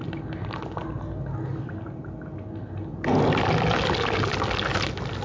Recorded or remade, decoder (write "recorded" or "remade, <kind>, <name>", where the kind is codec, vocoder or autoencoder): recorded